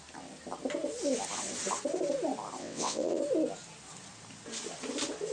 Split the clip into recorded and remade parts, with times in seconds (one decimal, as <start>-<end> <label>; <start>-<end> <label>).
0.0-2.6 recorded; 2.6-3.2 remade; 3.2-5.3 recorded